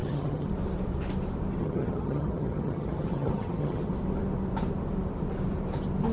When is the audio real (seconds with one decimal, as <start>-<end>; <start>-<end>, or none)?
0.5-1.6; 3.9-6.1